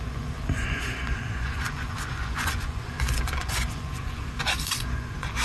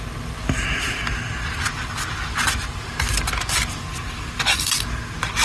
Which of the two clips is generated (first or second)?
first